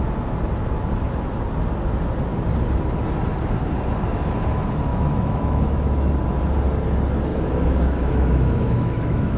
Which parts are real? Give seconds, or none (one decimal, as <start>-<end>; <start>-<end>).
0.0-4.9; 6.1-7.3